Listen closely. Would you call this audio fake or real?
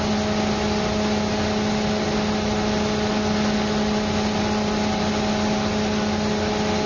real